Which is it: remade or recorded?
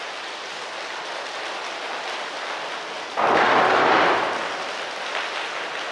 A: recorded